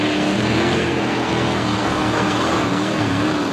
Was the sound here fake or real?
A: fake